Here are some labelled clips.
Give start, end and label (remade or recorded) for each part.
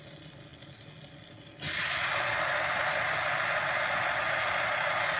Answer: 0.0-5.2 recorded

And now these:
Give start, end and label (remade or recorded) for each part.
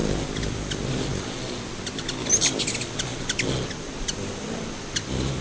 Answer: 0.0-5.4 recorded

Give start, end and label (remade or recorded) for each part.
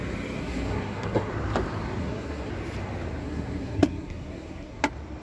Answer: 0.0-0.4 recorded; 0.4-1.3 remade; 1.3-2.0 recorded; 2.0-2.5 remade; 2.5-3.2 recorded; 3.2-4.8 remade; 4.8-5.2 recorded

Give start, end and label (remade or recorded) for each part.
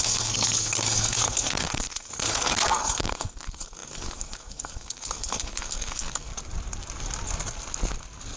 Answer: 0.0-6.3 remade; 6.3-8.4 recorded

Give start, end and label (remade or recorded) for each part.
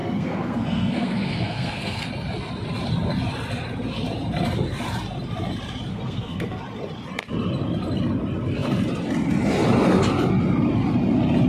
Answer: 0.0-2.1 remade; 2.1-5.9 recorded; 5.9-6.6 remade; 6.6-11.5 recorded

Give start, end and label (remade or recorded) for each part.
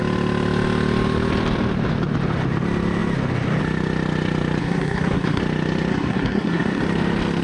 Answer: 0.0-4.6 recorded; 4.6-5.4 remade; 5.4-5.9 recorded; 5.9-6.8 remade; 6.8-7.4 recorded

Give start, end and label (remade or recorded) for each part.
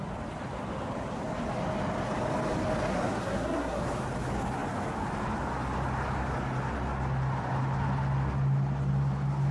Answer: 0.0-2.9 recorded; 2.9-3.8 remade; 3.8-9.5 recorded